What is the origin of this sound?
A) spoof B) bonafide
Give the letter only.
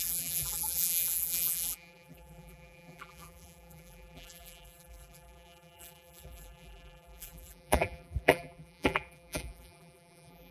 A